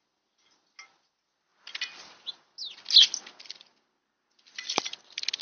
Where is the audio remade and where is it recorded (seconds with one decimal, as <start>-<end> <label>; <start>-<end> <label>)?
0.0-5.4 recorded